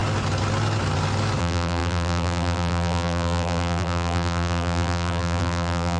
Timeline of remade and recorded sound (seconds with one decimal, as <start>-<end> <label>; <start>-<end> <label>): 0.0-1.4 recorded; 1.4-6.0 remade

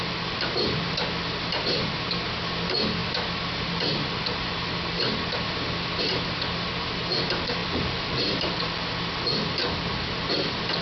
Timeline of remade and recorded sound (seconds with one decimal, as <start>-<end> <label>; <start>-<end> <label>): 0.0-7.6 recorded; 7.6-8.8 remade; 8.8-10.8 recorded

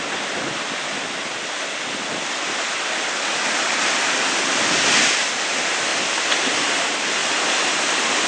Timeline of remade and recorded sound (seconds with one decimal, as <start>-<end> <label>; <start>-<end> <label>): 0.0-5.9 recorded; 5.9-6.4 remade; 6.4-7.2 recorded; 7.2-8.3 remade